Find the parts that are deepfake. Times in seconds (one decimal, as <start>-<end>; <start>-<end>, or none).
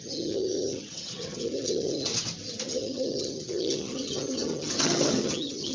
0.0-2.1; 2.7-5.7